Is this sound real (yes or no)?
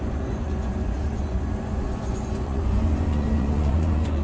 no